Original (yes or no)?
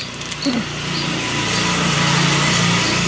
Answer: yes